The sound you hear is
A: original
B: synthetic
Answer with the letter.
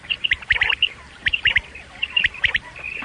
B